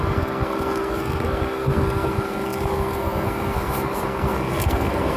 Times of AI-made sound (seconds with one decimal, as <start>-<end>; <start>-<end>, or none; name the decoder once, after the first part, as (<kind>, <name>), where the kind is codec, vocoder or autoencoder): 0.0-5.2 (codec, SNAC)